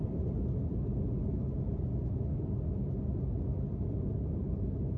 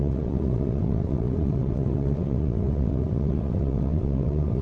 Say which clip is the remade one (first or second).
second